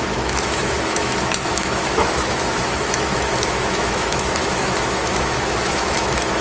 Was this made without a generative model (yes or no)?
no